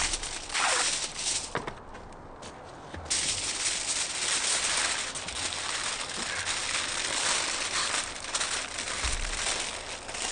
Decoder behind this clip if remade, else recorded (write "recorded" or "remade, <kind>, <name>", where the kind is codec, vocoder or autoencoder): recorded